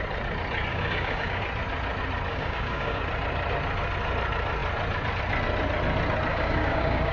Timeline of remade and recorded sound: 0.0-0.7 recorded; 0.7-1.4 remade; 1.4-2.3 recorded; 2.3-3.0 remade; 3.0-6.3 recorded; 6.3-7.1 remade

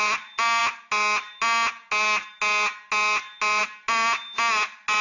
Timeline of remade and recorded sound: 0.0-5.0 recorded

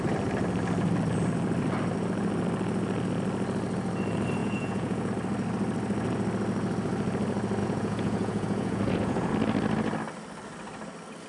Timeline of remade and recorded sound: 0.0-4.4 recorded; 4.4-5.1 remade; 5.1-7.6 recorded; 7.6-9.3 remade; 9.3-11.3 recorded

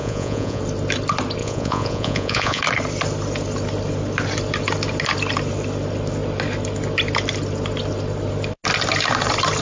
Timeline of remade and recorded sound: 0.0-0.6 remade; 0.6-1.4 recorded; 1.4-2.6 remade; 2.6-9.6 recorded